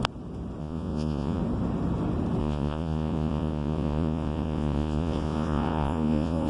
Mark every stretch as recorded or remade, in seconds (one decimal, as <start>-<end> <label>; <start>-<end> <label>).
0.0-0.6 recorded; 0.6-1.4 remade; 1.4-2.4 recorded; 2.4-6.5 remade